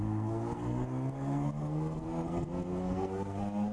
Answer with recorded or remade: remade